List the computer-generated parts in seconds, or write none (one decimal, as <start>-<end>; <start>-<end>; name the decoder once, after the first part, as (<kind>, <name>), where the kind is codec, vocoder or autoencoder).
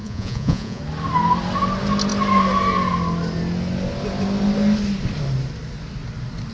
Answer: 0.0-0.8 (vocoder, Vocos)